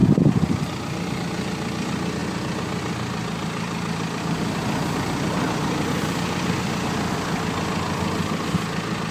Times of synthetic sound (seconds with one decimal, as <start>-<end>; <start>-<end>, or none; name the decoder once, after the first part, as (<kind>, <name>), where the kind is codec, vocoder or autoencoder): 0.0-1.1 (vocoder, BigVGAN v2)